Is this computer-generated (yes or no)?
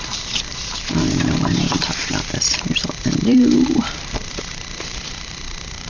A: yes